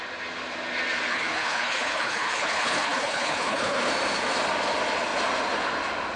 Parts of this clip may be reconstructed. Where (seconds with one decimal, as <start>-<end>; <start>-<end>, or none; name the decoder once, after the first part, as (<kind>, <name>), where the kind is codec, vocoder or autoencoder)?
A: 1.1-3.9 (codec, HILCodec)